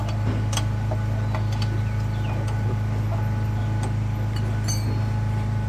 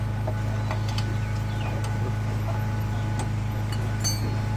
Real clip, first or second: second